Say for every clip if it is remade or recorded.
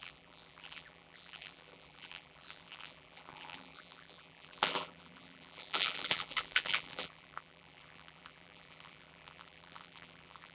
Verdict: remade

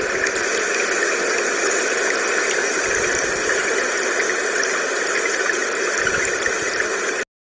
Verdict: recorded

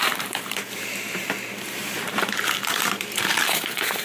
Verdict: remade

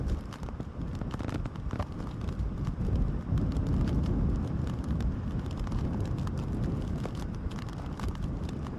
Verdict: remade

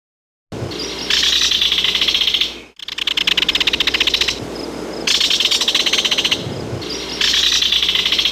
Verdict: recorded